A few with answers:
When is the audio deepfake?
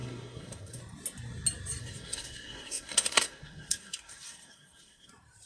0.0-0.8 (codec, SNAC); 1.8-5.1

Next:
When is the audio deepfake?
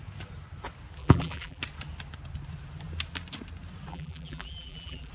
1.0-1.6 (vocoder, BigVGAN v2); 3.9-5.1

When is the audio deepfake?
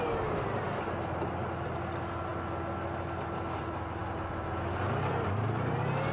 none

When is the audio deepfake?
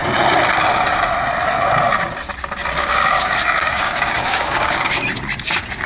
2.8-5.0 (codec, DAC)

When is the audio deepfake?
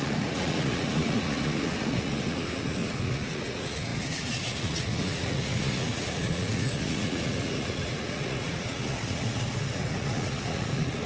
0.0-11.1 (vocoder, Vocos)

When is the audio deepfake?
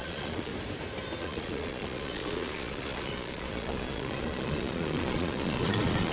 0.0-0.5 (vocoder, Vocos); 1.2-6.1